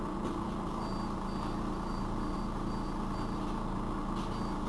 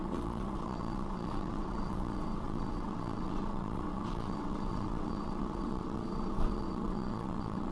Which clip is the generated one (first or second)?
second